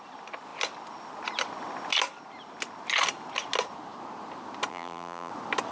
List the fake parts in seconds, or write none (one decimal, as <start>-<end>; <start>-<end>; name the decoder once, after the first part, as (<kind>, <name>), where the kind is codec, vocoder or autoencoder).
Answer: 4.7-5.3 (vocoder, BigVGAN v2)